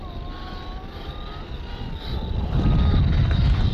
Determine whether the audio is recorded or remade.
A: recorded